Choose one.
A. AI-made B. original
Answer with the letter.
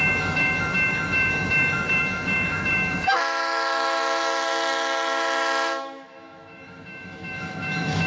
A